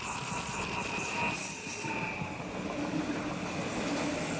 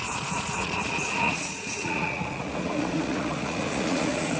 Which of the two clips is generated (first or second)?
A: second